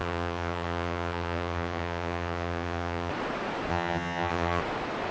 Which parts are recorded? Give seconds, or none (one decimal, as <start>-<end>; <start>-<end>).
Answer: 3.1-3.7; 4.6-5.1